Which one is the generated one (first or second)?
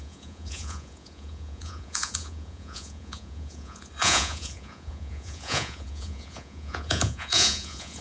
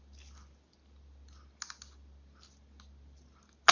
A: first